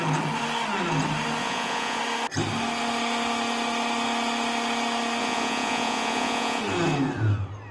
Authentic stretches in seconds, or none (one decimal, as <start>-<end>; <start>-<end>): 0.0-1.4; 2.0-5.2; 6.6-7.7